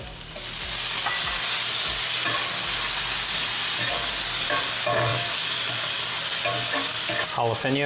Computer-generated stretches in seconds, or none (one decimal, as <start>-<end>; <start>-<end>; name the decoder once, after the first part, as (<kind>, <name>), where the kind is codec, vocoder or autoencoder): none